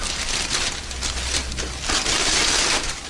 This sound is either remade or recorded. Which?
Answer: recorded